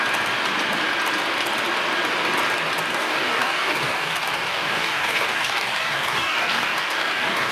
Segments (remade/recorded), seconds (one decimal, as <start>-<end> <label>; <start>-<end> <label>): 0.0-2.9 recorded; 2.9-7.5 remade